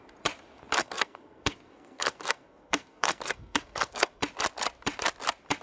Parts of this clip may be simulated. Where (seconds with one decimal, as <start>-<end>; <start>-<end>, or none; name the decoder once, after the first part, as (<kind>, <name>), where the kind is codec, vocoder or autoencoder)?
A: 0.8-4.2 (codec, SNAC)